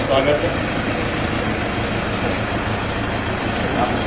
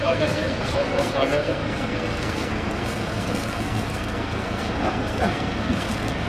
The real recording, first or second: first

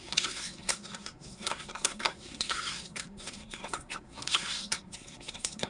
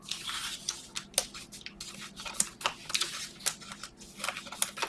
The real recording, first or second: second